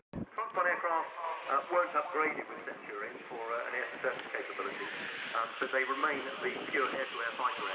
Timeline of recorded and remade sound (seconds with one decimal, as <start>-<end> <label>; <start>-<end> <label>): 0.0-7.7 recorded